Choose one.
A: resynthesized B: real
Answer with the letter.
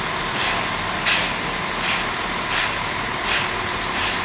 B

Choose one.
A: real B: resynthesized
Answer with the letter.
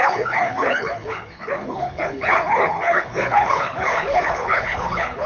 B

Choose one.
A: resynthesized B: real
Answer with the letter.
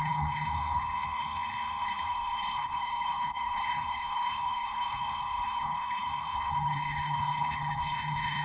A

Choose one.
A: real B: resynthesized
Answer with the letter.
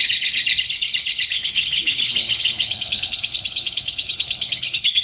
B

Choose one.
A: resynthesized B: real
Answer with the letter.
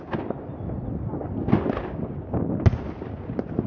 B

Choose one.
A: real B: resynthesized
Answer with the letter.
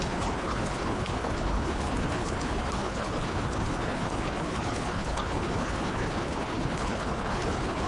B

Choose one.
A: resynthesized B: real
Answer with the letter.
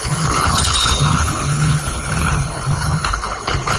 A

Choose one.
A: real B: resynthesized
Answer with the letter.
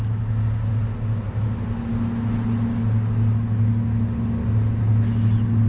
A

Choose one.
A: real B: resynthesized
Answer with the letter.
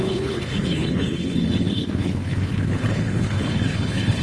B